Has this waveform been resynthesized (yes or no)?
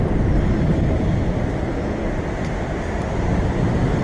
no